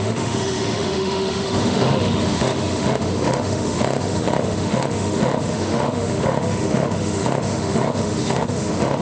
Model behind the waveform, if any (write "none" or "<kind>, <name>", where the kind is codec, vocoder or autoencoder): autoencoder, DAC-VAE